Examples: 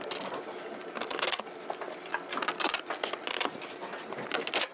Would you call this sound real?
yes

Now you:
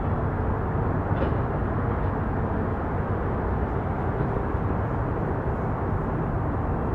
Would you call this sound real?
yes